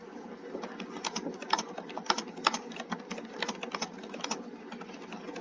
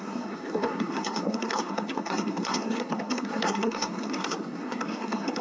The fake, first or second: second